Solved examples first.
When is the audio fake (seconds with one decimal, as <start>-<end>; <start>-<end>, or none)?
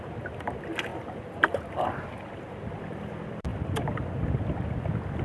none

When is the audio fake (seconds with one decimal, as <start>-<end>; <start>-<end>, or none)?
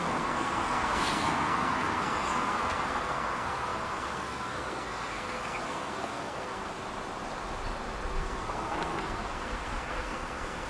0.0-6.7; 8.1-10.7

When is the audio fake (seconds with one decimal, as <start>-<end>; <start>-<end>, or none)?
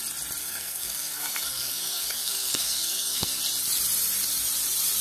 0.4-3.4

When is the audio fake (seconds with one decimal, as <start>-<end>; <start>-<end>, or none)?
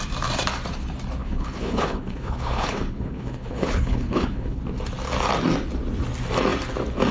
1.2-4.6